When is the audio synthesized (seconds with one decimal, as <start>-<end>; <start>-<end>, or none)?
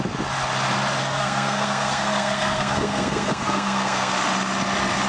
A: 1.0-4.1